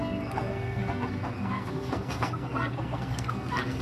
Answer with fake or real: fake